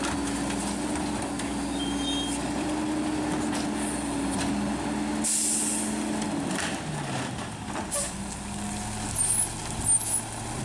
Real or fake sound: real